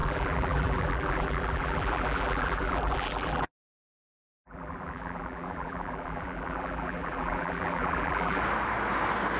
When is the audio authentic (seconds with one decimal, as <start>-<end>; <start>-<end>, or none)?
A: 3.5-4.3; 8.4-9.4